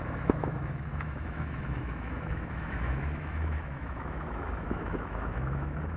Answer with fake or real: fake